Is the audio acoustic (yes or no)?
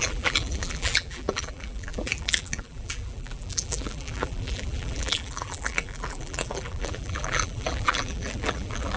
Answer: no